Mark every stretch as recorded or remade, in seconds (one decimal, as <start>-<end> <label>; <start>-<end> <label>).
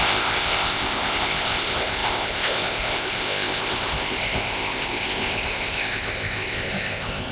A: 0.0-7.3 remade